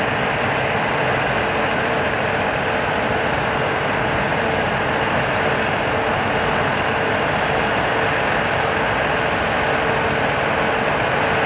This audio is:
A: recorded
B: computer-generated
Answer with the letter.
A